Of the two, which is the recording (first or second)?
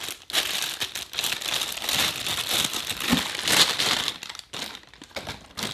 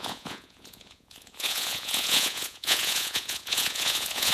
first